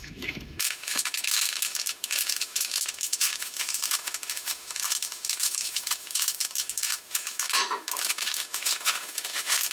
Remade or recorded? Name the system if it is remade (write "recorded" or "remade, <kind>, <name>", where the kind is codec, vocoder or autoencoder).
remade, autoencoder, DAC-VAE